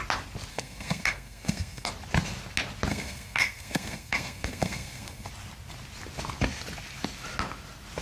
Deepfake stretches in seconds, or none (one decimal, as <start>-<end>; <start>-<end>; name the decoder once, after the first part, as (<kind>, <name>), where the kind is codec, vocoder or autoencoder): 0.5-1.9 (codec, SNAC); 2.9-5.3